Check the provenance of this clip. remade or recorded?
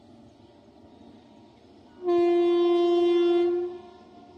recorded